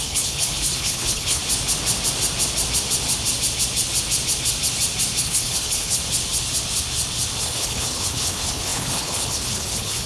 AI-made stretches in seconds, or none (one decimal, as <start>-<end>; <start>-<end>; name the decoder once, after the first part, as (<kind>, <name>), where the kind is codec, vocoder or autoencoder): 0.0-1.4 (codec, HILCodec); 5.2-6.0; 7.4-10.1